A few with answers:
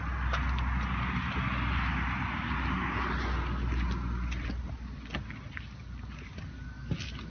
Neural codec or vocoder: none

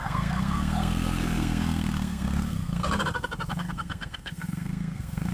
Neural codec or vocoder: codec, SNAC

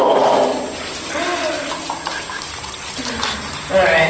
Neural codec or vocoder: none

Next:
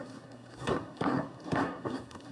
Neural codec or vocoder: codec, SNAC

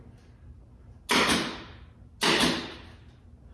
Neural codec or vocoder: none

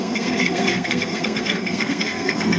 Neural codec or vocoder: codec, SNAC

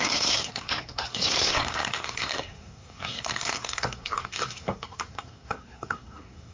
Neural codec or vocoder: codec, SNAC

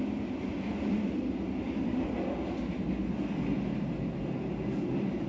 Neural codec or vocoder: none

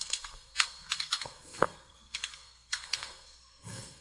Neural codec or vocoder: codec, SNAC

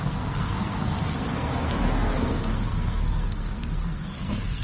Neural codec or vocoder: codec, SNAC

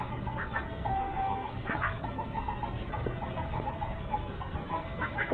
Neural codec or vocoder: codec, SNAC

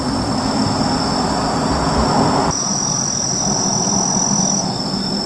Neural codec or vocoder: none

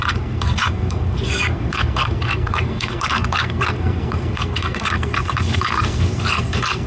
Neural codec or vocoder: codec, SNAC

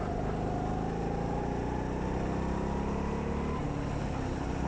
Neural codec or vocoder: none